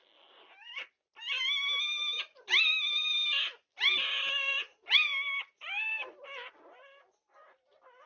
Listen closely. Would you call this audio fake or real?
real